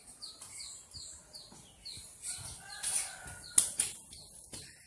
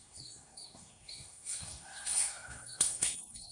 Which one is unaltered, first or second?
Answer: first